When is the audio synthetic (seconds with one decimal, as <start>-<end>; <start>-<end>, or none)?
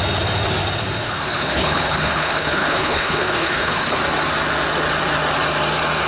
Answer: 1.0-4.0